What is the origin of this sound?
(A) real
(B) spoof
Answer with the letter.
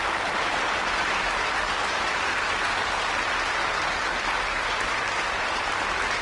A